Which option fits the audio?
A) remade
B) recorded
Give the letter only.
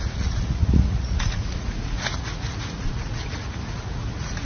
A